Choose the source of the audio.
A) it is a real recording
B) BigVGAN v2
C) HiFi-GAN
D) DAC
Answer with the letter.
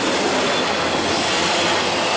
A